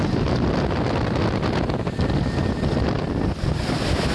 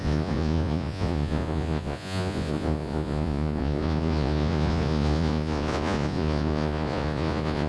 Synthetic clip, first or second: second